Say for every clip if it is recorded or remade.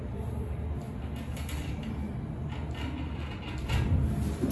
recorded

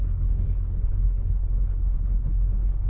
remade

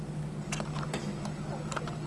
recorded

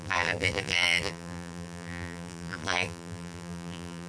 remade